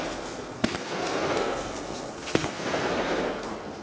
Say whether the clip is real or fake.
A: fake